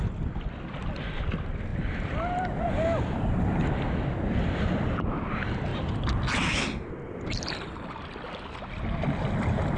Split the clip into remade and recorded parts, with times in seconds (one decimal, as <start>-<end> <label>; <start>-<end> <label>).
0.0-9.8 recorded